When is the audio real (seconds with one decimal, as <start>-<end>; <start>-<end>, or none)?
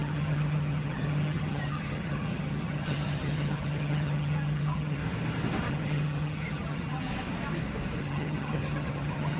5.0-5.7; 7.1-8.0